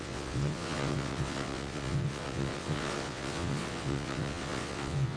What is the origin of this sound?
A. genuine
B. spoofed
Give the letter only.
B